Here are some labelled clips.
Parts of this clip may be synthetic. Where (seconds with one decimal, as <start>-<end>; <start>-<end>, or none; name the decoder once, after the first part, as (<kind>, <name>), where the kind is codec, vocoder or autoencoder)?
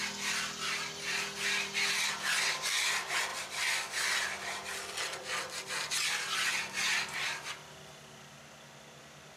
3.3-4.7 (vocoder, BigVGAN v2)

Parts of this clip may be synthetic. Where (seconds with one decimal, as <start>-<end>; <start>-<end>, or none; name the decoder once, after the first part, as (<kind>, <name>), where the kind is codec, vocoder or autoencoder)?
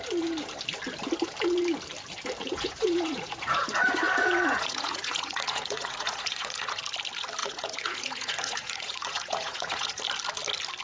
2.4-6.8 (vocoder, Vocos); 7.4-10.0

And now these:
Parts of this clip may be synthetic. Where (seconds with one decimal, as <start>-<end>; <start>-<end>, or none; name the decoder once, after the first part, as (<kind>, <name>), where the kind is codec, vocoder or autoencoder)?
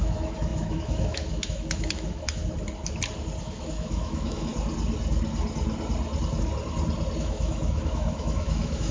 0.0-2.4 (autoencoder, DAC-VAE); 3.4-4.5; 7.2-8.9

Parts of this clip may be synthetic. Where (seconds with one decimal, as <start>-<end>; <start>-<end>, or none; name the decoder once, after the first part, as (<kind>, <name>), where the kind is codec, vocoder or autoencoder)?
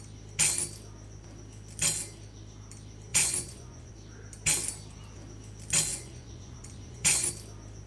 3.1-3.9 (vocoder, Vocos); 5.9-7.3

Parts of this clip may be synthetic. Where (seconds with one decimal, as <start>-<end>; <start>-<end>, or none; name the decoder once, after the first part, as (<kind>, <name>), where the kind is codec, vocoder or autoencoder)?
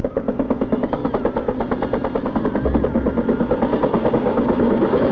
0.0-1.0 (codec, DAC); 4.1-5.1